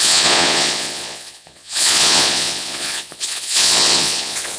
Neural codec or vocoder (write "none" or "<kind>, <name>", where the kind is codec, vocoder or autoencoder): vocoder, Vocos